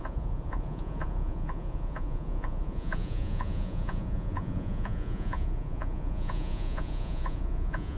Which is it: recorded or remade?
remade